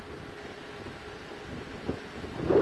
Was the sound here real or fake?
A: real